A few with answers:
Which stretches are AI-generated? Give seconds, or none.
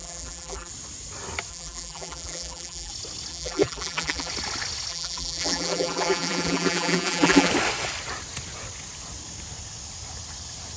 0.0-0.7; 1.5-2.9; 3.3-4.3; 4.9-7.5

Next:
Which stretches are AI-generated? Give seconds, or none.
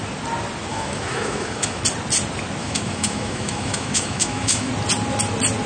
0.7-1.8; 2.6-4.7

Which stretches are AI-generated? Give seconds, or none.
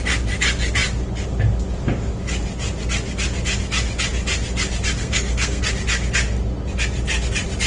5.0-5.6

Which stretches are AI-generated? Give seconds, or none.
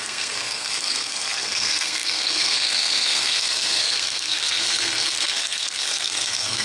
0.0-6.6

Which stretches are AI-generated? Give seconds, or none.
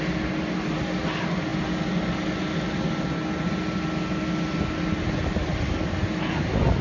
none